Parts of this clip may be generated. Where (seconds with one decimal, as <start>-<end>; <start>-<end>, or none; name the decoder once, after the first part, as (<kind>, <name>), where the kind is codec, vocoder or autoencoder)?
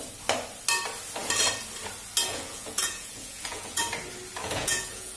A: 2.3-3.8 (vocoder, Vocos); 4.4-5.2